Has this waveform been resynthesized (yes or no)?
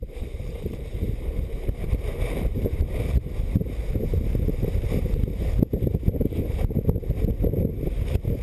yes